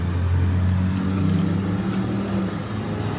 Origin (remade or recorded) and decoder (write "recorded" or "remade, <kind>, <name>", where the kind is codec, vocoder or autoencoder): recorded